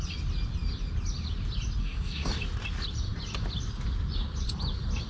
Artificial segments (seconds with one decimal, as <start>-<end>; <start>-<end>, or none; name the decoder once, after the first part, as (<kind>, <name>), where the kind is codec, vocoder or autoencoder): 1.8-2.3 (codec, SNAC)